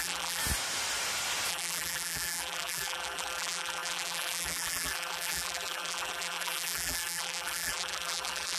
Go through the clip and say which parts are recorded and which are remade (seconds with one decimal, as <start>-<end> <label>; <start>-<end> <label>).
0.0-0.4 remade; 0.4-1.5 recorded; 1.5-8.6 remade